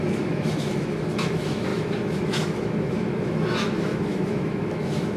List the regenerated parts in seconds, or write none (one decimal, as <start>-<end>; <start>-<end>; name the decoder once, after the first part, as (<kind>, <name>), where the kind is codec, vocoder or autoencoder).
0.0-5.2 (autoencoder, DAC-VAE)